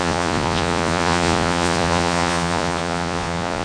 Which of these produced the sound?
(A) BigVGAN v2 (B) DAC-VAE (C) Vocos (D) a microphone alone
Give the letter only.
C